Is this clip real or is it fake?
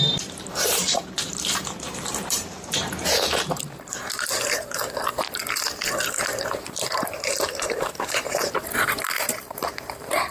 fake